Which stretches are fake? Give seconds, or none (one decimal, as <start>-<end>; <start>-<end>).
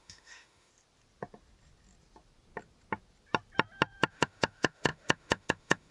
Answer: 0.0-0.7; 4.1-5.9